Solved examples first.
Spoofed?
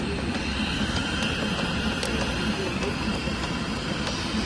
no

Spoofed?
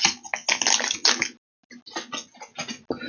no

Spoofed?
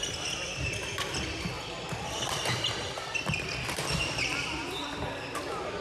no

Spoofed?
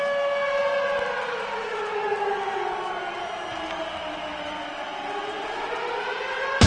no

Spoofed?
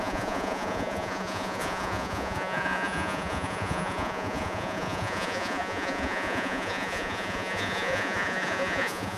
yes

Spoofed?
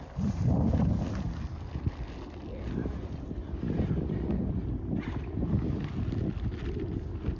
no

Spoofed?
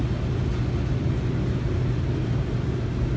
no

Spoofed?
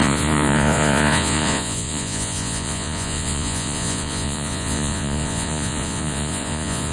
yes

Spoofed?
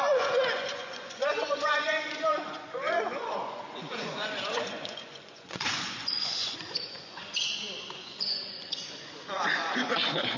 yes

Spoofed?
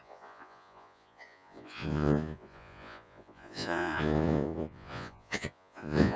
yes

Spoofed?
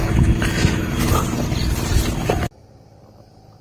no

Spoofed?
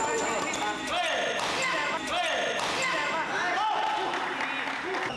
no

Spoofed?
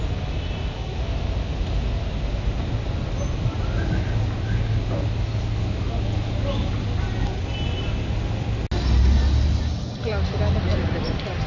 no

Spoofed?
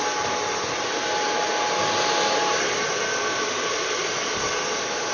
no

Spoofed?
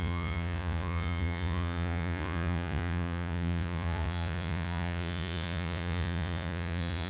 yes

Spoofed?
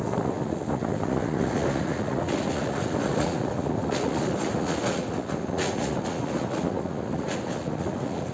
yes